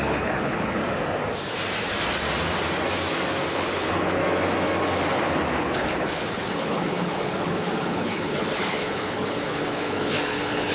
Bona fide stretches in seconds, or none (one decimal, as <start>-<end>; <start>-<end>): 0.8-3.5; 4.2-5.6

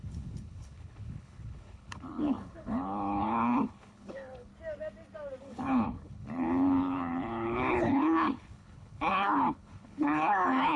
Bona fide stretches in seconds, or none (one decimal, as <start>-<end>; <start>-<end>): 4.5-5.4

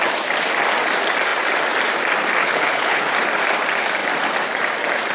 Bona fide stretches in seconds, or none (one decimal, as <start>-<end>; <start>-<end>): 0.0-2.4; 3.0-5.1

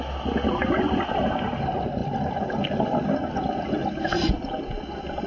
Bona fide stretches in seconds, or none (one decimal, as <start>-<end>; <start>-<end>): 0.0-5.3